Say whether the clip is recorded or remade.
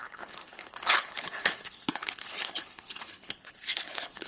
remade